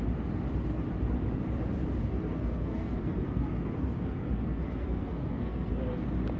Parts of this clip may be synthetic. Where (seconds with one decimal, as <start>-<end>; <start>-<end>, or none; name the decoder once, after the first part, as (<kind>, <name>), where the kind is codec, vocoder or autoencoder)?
2.0-5.8 (codec, SNAC)